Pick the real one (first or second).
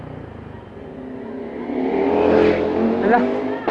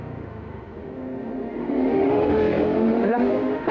first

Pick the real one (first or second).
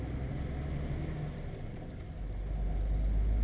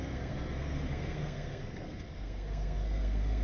first